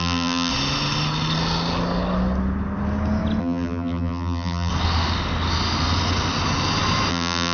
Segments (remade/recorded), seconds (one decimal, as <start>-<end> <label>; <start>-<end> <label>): 0.0-0.5 remade; 0.5-3.4 recorded; 3.4-4.7 remade; 4.7-7.1 recorded; 7.1-7.5 remade